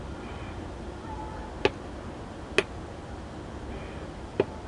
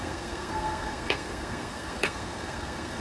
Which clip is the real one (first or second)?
first